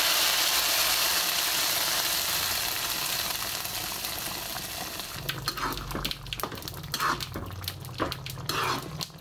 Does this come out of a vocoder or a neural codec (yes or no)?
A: no